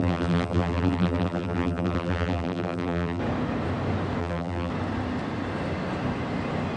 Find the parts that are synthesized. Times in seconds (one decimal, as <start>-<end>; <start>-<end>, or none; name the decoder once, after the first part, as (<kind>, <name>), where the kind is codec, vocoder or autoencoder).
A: 0.0-3.2 (vocoder, BigVGAN v2); 4.2-4.7